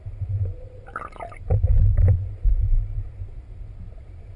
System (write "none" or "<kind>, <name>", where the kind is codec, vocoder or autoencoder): vocoder, BigVGAN v2